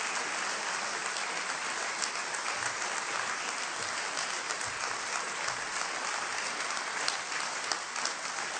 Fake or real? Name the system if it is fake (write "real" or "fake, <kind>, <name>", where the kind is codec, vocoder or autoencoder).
real